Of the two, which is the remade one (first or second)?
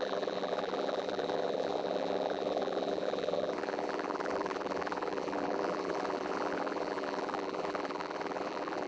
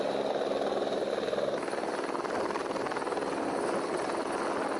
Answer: first